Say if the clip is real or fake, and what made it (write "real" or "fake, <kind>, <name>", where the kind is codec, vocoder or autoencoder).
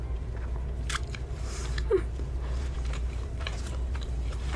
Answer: fake, vocoder, BigVGAN v2